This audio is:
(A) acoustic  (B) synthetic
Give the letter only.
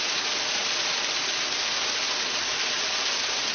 A